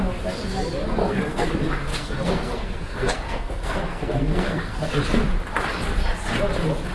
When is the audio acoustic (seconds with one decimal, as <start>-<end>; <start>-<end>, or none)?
0.0-1.0; 1.5-1.9; 4.9-6.9